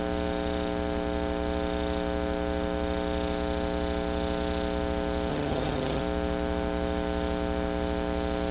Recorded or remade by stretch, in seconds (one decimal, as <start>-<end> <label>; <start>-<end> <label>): 0.0-5.3 recorded; 5.3-6.0 remade; 6.0-8.5 recorded